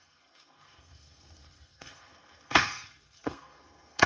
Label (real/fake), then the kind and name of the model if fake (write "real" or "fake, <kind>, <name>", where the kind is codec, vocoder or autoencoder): fake, codec, SNAC